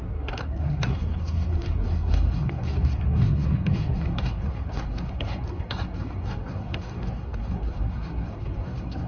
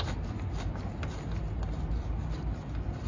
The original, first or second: second